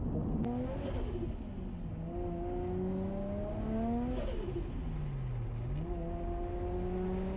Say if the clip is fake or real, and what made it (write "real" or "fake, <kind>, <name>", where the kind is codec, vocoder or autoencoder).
real